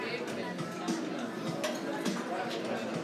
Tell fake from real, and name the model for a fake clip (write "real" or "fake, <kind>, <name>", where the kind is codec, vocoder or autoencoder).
real